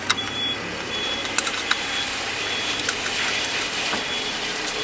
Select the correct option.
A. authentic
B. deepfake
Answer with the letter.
B